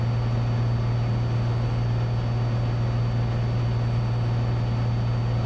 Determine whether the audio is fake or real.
real